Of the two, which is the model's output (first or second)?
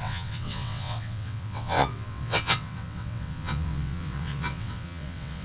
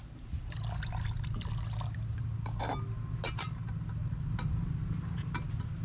first